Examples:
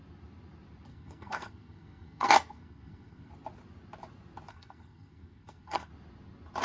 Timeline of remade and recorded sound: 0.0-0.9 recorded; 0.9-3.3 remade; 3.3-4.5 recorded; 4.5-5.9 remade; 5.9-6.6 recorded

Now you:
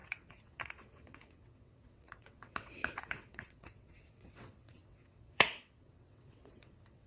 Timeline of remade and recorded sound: 0.0-7.1 remade

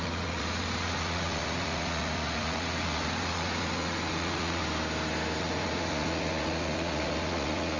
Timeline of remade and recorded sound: 0.0-4.6 remade; 4.6-5.4 recorded; 5.4-7.8 remade

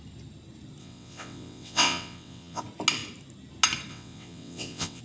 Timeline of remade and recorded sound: 0.0-0.8 recorded; 0.8-2.6 remade; 2.6-3.9 recorded; 3.9-5.0 remade

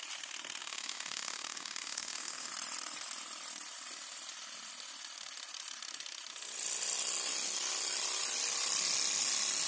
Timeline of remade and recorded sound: 0.0-0.6 recorded; 0.6-2.5 remade; 2.5-9.7 recorded

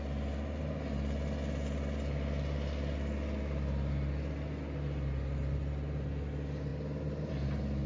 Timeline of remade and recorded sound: 0.0-7.9 recorded

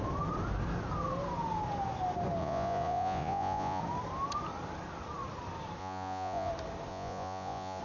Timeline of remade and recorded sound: 0.0-2.4 recorded; 2.4-3.8 remade; 3.8-5.8 recorded; 5.8-6.5 remade; 6.5-6.9 recorded; 6.9-7.8 remade